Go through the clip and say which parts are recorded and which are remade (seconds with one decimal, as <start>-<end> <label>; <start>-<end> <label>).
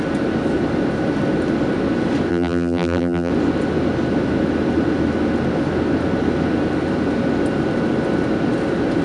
0.0-2.3 recorded; 2.3-3.3 remade; 3.3-9.0 recorded